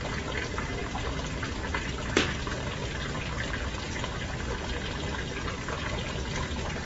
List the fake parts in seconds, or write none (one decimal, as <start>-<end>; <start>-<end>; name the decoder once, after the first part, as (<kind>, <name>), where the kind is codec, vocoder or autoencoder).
none